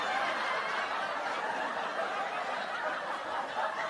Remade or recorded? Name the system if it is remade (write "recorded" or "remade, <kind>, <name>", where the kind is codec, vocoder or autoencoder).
recorded